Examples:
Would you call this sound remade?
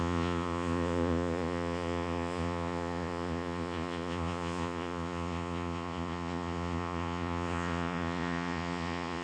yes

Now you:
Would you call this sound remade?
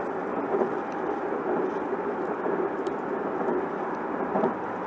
no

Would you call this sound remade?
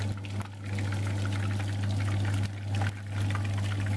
no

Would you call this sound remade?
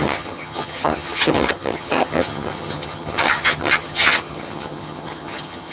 yes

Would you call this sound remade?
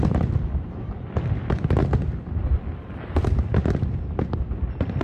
no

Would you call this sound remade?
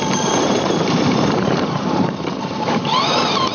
yes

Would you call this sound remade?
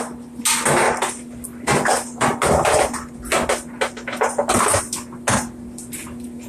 no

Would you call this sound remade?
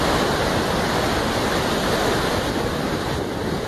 no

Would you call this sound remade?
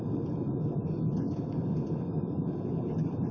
no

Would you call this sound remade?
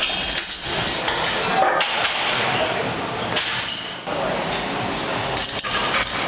no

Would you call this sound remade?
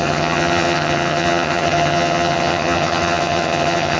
yes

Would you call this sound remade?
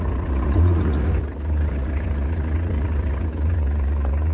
yes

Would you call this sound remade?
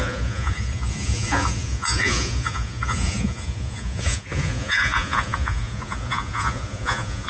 yes